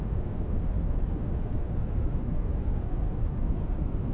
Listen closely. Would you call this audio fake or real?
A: fake